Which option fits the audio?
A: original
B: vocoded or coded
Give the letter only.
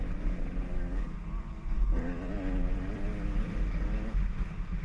A